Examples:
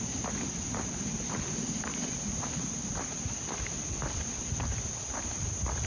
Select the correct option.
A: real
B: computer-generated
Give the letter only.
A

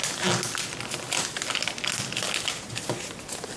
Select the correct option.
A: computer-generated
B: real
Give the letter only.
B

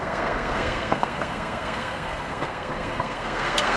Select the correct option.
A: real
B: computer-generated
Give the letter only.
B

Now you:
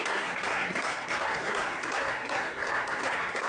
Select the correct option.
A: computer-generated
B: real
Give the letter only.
A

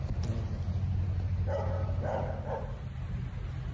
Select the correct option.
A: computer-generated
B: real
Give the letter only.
B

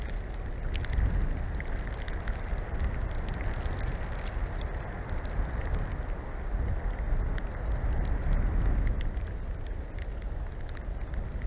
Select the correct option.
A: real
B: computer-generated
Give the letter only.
A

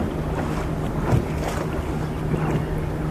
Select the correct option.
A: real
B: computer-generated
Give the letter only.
A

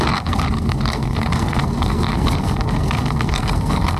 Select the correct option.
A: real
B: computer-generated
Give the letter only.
B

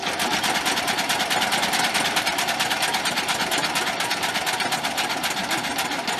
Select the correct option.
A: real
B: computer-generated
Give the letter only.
A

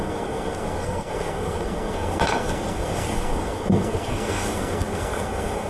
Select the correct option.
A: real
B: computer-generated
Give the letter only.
B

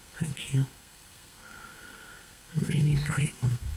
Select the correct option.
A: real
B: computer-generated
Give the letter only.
B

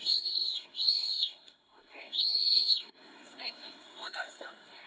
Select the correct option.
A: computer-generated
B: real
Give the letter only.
A